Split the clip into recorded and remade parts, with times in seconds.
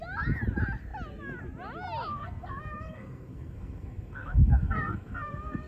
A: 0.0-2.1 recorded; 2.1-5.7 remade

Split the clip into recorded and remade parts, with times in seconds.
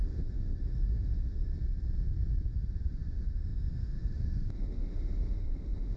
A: 0.0-1.5 remade; 1.5-2.5 recorded; 2.5-6.0 remade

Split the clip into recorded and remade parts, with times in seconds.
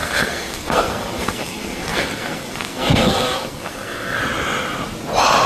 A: 0.0-4.2 remade; 4.2-5.5 recorded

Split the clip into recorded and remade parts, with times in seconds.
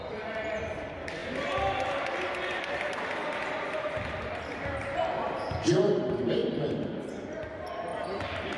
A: 0.0-6.4 recorded; 6.4-7.3 remade; 7.3-7.9 recorded; 7.9-8.6 remade